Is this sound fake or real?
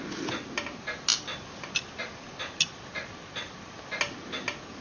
real